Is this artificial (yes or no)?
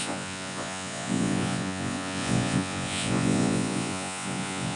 yes